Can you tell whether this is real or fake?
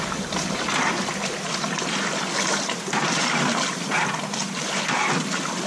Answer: real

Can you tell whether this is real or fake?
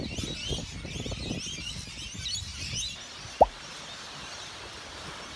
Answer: real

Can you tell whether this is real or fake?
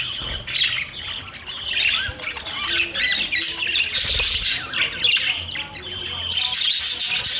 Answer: real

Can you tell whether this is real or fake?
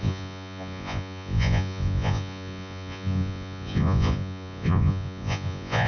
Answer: fake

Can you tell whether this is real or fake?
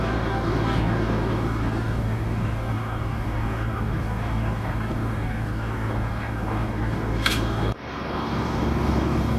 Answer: fake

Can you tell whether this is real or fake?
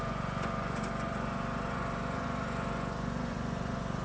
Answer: fake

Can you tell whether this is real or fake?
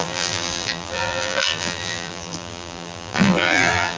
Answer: fake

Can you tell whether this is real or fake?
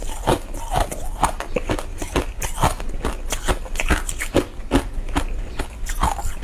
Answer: real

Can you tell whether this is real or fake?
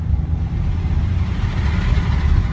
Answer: real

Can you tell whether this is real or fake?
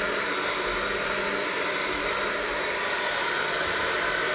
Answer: real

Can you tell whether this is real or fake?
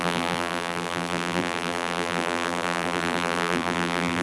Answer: fake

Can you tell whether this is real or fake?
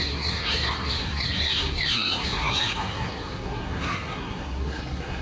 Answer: fake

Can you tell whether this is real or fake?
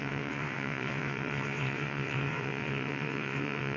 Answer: fake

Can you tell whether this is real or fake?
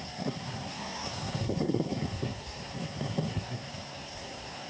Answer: fake